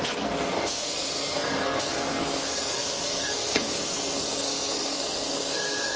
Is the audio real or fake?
fake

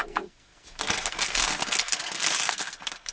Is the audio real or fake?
fake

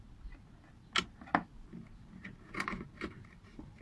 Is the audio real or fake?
real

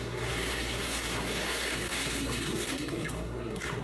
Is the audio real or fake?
fake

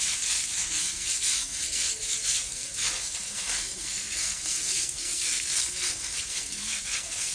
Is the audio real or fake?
fake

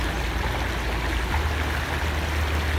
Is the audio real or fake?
real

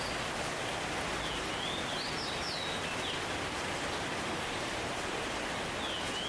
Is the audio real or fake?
real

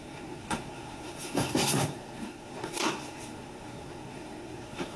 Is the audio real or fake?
fake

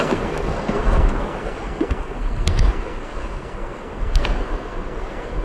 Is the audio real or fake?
fake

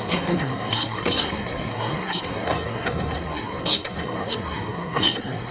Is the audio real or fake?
fake